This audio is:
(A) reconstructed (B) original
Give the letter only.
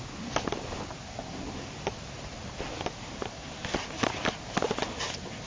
B